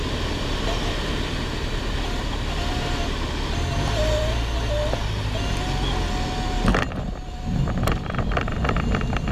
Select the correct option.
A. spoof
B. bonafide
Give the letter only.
B